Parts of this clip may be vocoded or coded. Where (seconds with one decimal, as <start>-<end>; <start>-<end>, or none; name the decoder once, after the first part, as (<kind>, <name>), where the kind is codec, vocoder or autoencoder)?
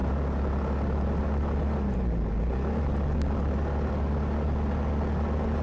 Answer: none